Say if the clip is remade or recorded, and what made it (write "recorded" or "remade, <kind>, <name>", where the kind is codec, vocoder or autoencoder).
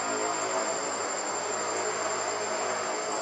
recorded